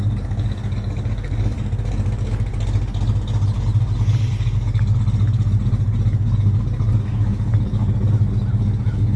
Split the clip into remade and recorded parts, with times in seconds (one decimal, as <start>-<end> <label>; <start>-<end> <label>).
0.0-2.5 remade; 2.5-7.0 recorded; 7.0-7.8 remade; 7.8-8.5 recorded; 8.5-9.2 remade